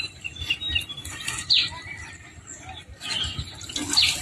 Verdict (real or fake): real